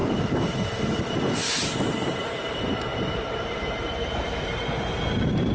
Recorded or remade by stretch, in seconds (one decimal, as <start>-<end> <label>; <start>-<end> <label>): 0.0-5.5 remade